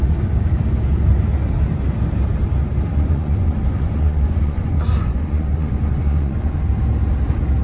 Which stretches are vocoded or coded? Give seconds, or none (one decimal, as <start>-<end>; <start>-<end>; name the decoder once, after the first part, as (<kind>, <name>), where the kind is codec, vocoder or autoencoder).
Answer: 2.9-6.7 (vocoder, Vocos)